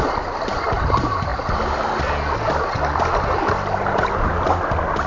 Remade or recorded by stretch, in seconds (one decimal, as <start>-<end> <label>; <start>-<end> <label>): 0.0-5.1 recorded